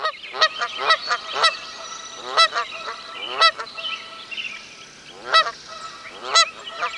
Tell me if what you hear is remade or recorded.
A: recorded